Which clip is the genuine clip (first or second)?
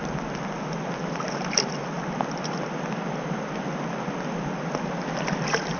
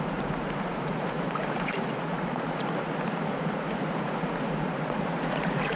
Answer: first